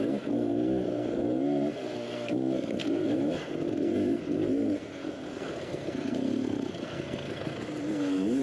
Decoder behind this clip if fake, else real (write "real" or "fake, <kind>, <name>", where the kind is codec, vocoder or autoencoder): fake, codec, SNAC